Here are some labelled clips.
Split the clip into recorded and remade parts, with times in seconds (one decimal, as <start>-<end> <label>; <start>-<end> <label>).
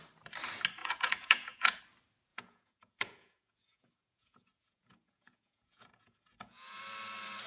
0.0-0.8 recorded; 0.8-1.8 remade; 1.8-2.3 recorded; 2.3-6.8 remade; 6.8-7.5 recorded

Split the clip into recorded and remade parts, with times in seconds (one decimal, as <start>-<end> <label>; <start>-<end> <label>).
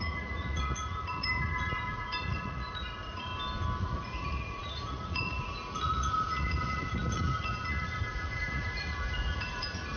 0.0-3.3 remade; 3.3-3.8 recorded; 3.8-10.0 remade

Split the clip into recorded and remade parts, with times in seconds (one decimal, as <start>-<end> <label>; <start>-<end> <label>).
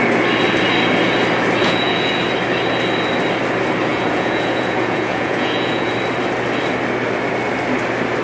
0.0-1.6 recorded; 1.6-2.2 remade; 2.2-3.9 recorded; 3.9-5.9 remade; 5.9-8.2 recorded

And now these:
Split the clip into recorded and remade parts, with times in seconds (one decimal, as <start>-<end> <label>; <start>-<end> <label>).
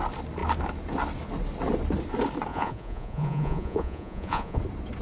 0.0-2.5 recorded; 2.5-4.6 remade; 4.6-5.0 recorded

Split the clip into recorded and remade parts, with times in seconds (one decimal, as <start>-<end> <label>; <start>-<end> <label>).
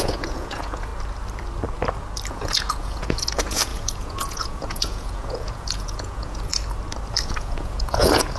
0.0-0.9 remade; 0.9-2.3 recorded; 2.3-6.5 remade; 6.5-7.2 recorded; 7.2-8.4 remade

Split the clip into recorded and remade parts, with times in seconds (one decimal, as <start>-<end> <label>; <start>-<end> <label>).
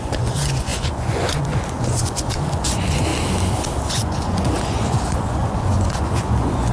0.0-3.1 remade; 3.1-3.9 recorded; 3.9-6.7 remade